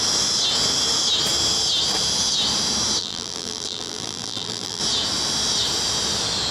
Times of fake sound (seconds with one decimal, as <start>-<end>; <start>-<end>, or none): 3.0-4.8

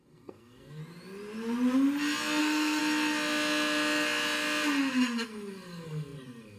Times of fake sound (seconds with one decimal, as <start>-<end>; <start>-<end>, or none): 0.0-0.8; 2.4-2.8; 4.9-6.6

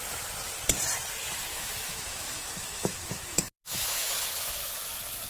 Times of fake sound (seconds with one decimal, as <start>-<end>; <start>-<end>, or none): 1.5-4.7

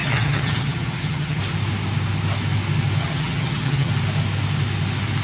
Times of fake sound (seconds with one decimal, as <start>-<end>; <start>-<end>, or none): 0.0-1.4; 3.0-3.9

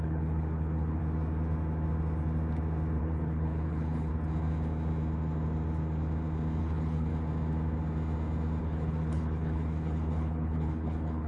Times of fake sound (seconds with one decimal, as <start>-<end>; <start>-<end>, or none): 0.0-1.0; 3.0-4.1; 6.6-7.1; 8.6-11.3

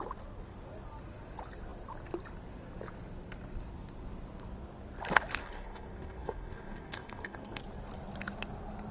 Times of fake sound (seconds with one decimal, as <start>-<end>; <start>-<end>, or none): 5.4-7.6

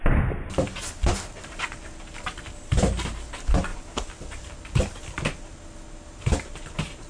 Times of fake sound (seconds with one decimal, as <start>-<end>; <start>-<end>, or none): none